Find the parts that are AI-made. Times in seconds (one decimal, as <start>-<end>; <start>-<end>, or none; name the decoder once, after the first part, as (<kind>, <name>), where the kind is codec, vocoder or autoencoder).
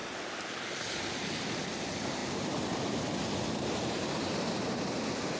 none